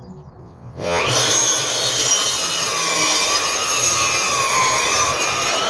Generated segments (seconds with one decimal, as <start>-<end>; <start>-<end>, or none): 0.4-1.0